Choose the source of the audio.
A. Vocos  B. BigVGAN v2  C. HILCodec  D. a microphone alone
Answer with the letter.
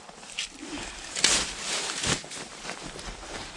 D